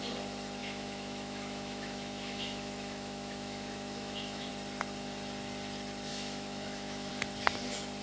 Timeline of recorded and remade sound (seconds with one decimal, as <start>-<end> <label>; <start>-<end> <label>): 0.0-0.6 recorded; 0.6-4.5 remade; 4.5-6.1 recorded; 6.1-7.1 remade; 7.1-8.0 recorded

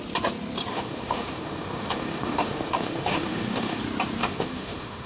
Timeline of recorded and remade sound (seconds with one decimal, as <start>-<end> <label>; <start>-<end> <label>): 0.0-0.7 recorded; 0.7-3.8 remade; 3.8-4.2 recorded; 4.2-5.1 remade

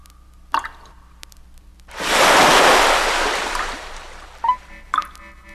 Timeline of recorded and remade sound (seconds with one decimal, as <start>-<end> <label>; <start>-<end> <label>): 0.0-5.5 recorded

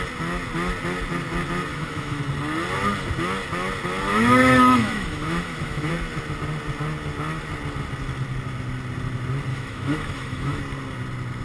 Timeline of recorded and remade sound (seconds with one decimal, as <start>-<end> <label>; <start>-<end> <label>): 0.0-1.7 recorded; 1.7-2.2 remade; 2.2-4.1 recorded; 4.1-5.9 remade; 5.9-9.5 recorded; 9.5-10.6 remade; 10.6-11.4 recorded

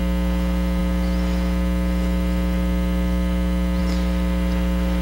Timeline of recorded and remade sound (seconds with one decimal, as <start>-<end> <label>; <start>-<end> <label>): 0.0-5.0 recorded

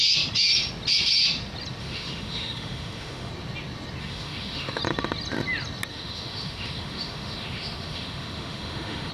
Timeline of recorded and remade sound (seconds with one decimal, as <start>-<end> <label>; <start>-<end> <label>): 0.0-1.8 recorded; 1.8-3.3 remade; 3.3-4.0 recorded; 4.0-4.8 remade; 4.8-5.9 recorded; 5.9-9.1 remade

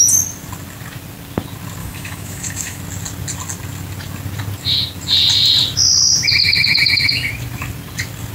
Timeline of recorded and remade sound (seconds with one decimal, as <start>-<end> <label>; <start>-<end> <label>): 0.0-1.8 recorded; 1.8-2.8 remade; 2.8-6.4 recorded; 6.4-7.3 remade; 7.3-8.3 recorded

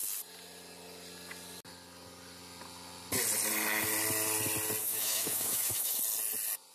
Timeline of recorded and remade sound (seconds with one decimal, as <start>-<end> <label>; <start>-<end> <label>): 0.0-4.8 recorded; 4.8-6.0 remade; 6.0-6.7 recorded